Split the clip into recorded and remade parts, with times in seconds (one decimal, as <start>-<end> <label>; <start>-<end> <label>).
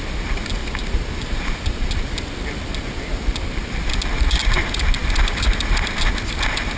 0.0-0.6 recorded; 0.6-1.9 remade; 1.9-6.8 recorded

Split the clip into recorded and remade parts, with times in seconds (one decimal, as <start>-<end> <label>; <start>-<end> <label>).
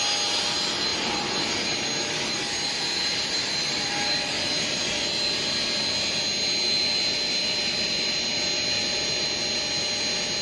0.0-0.9 recorded; 0.9-3.9 remade; 3.9-10.4 recorded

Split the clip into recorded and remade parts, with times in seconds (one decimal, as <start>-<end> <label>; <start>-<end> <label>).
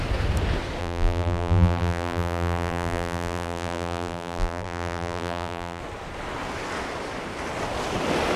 0.0-0.8 recorded; 0.8-5.8 remade; 5.8-8.4 recorded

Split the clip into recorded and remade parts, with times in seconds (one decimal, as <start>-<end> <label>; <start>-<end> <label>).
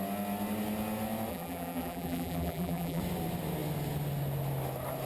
0.0-1.3 recorded; 1.3-3.0 remade; 3.0-5.1 recorded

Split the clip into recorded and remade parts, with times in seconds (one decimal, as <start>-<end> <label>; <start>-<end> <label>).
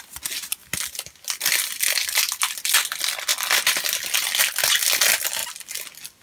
0.0-6.2 recorded